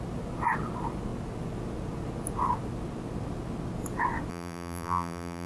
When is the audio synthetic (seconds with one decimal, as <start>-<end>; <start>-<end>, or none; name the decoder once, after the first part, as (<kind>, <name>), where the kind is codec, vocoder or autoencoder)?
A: 4.3-5.5 (vocoder, BigVGAN v2)